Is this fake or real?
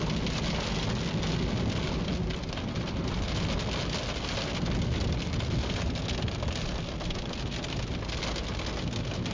real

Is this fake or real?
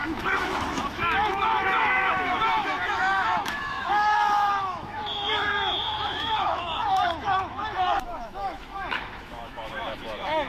fake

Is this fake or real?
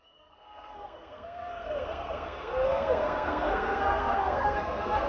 fake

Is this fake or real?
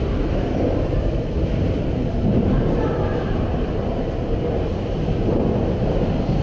fake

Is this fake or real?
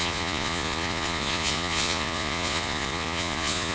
fake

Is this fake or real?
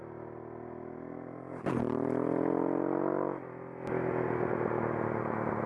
real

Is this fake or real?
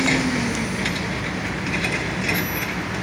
real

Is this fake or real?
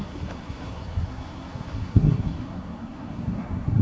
fake